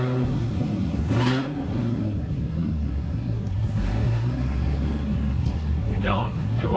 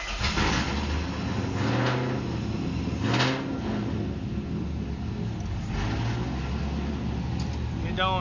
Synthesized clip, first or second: first